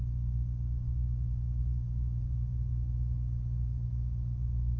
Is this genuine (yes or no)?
yes